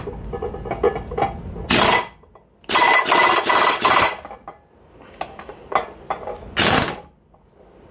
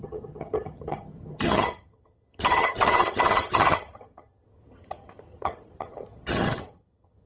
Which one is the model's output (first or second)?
second